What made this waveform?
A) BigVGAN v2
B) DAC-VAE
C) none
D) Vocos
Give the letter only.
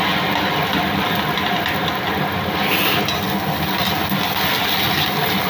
C